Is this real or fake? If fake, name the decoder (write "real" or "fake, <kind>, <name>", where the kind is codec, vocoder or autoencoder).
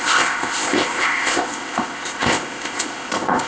fake, codec, ZipCodec